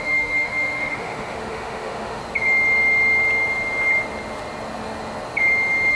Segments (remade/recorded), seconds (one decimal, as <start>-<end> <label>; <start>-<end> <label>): 0.0-2.2 remade; 2.2-5.9 recorded